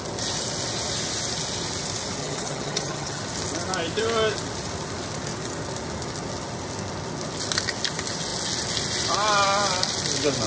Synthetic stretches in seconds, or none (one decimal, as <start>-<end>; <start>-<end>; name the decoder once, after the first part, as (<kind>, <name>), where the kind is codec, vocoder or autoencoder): 2.2-3.2 (vocoder, HiFi-GAN)